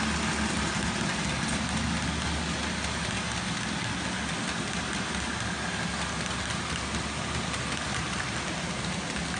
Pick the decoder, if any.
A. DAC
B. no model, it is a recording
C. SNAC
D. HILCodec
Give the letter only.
B